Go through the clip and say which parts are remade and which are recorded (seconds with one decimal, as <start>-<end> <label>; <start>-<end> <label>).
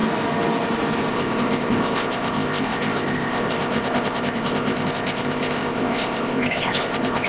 0.0-1.1 recorded; 1.1-7.3 remade